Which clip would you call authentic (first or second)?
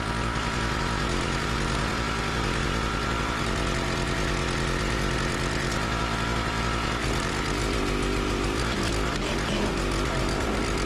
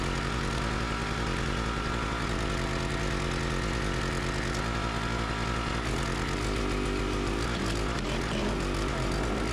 second